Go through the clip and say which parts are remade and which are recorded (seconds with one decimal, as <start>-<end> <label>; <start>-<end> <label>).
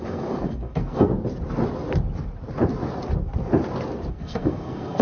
0.0-1.1 remade; 1.1-4.1 recorded; 4.1-5.0 remade